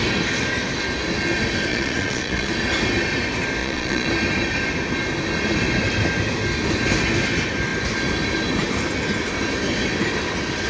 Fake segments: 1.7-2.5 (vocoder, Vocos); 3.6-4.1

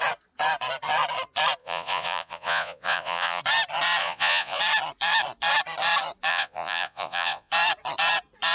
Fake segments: 1.6-3.4 (vocoder, Vocos); 4.0-4.6; 6.3-7.5

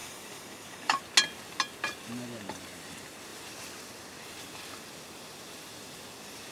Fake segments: 0.0-1.0 (codec, DAC)